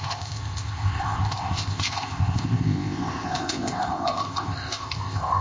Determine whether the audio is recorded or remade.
remade